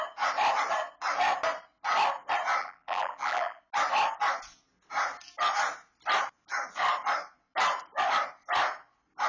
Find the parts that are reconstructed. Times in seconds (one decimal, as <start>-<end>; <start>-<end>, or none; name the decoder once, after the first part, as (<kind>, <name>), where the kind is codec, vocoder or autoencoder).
2.6-3.6 (vocoder, BigVGAN v2)